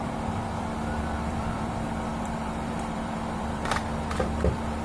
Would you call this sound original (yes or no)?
no